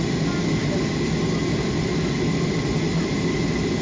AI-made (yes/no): no